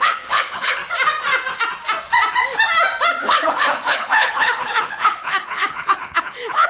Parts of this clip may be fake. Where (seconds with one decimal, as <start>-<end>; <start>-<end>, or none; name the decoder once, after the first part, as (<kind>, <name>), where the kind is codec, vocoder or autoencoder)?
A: 0.0-0.8 (codec, HILCodec); 3.2-6.7